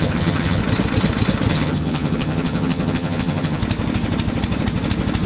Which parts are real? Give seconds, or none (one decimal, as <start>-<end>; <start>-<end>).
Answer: 0.6-1.5; 3.6-5.3